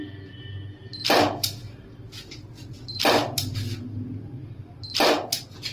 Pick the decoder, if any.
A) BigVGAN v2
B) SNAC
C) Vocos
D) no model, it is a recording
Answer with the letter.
D